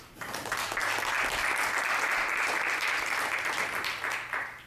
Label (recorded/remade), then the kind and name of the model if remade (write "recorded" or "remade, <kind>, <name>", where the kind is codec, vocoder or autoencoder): recorded